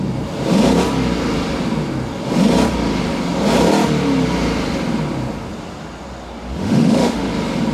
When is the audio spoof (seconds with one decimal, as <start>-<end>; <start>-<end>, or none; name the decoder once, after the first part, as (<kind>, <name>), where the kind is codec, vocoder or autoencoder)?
6.6-7.3 (autoencoder, DAC-VAE)